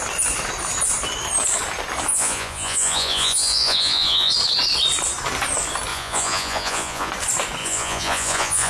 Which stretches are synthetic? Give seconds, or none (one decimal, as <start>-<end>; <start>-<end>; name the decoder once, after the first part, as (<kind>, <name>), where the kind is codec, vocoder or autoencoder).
2.1-4.3 (vocoder, Vocos); 5.9-7.1; 7.6-8.7